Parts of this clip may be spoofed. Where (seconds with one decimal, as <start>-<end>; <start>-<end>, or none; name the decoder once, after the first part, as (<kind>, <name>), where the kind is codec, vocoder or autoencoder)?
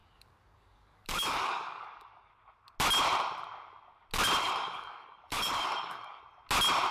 0.0-2.3 (codec, DAC); 4.4-6.2